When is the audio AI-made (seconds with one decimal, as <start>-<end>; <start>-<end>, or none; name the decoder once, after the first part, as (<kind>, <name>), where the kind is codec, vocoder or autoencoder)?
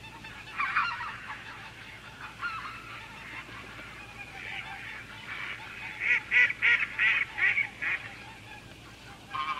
0.8-2.2 (autoencoder, DAC-VAE)